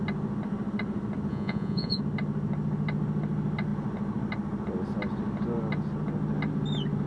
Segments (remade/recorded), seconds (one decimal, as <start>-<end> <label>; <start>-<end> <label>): 0.0-1.3 recorded; 1.3-2.0 remade; 2.0-7.1 recorded